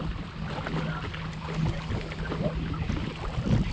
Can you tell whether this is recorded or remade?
recorded